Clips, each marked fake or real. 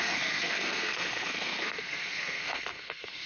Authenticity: fake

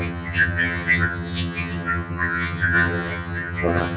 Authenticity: fake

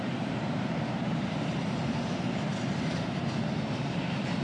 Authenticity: fake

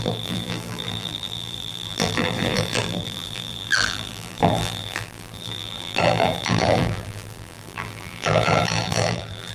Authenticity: fake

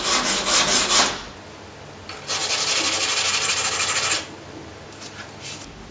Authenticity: real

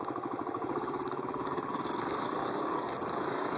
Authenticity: fake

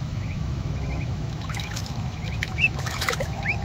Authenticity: fake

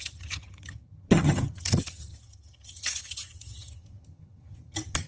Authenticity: fake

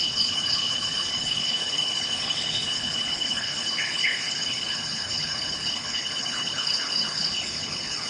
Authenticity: fake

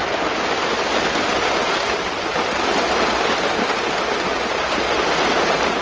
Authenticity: real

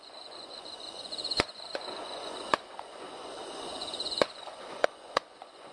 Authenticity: fake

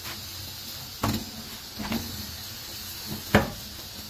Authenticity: real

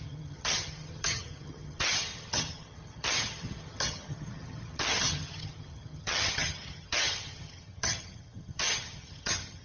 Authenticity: fake